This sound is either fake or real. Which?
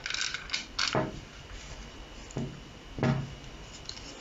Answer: real